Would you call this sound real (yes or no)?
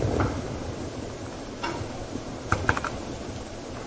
yes